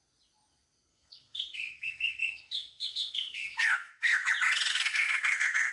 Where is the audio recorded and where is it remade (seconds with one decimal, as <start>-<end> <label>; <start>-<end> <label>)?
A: 0.0-0.9 recorded; 0.9-4.3 remade; 4.3-4.7 recorded; 4.7-5.7 remade